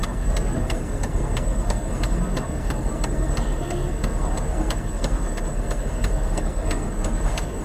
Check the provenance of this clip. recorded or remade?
remade